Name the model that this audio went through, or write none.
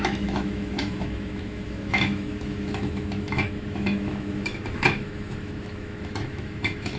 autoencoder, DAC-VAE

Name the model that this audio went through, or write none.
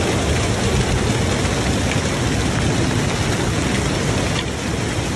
none